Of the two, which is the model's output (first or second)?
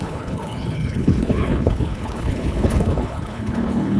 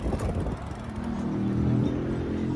first